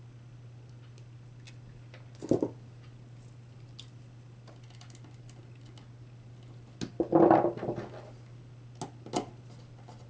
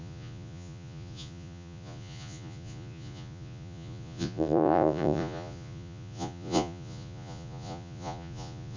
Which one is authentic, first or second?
first